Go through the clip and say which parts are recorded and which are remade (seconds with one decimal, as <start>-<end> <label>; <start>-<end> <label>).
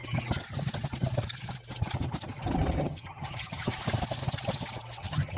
0.0-2.8 recorded; 2.8-3.7 remade; 3.7-5.0 recorded; 5.0-5.4 remade